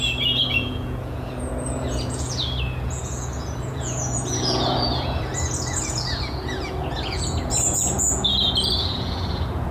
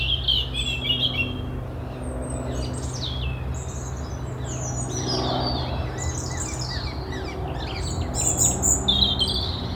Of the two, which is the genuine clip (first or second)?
second